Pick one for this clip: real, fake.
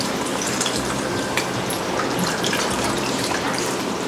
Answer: fake